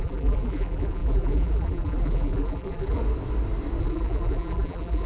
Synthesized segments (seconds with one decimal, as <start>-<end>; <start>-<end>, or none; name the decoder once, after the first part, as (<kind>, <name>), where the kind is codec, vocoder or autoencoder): 0.0-3.0 (vocoder, BigVGAN v2); 3.8-5.1